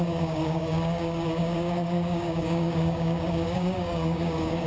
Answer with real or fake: fake